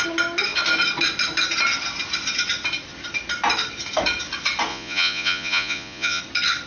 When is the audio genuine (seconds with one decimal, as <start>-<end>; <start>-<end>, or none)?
0.0-4.7; 6.2-6.7